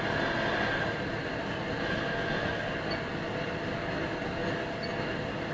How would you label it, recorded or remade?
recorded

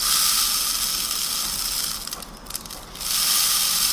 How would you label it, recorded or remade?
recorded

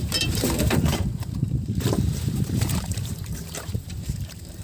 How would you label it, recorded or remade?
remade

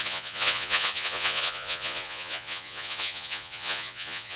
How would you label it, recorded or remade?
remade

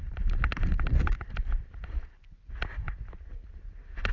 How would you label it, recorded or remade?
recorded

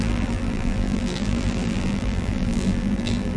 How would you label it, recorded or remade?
remade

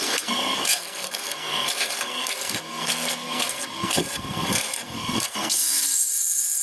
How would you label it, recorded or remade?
remade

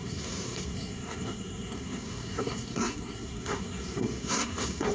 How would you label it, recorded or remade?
remade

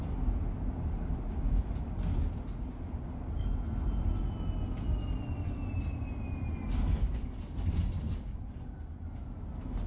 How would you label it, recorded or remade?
recorded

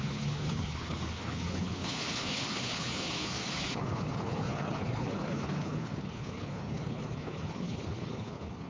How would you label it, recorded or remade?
remade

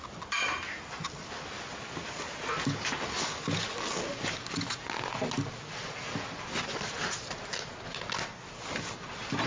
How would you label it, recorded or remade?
recorded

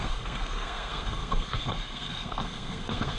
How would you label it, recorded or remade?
remade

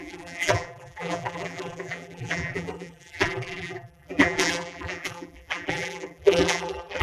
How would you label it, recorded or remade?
remade